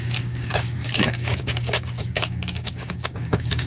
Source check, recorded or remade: remade